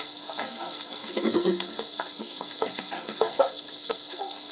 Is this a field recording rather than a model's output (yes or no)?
no